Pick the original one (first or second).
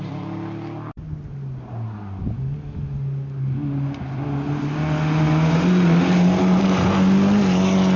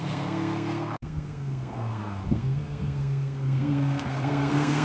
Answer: first